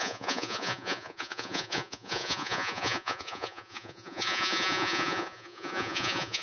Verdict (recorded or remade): remade